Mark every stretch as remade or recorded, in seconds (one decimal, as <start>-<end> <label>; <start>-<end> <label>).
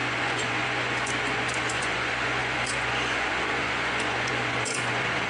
0.0-5.3 remade